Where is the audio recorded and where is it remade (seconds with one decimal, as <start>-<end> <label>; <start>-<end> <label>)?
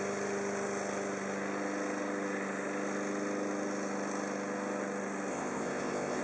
0.0-5.3 recorded; 5.3-6.2 remade